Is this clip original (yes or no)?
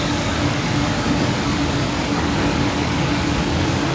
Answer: no